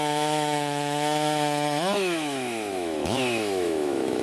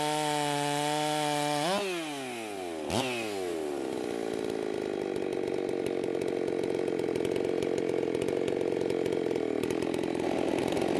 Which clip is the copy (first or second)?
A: first